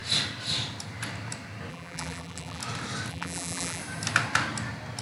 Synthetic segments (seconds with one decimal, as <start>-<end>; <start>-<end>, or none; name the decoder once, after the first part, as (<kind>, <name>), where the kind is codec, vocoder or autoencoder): 1.7-2.6 (vocoder, BigVGAN v2); 3.1-3.8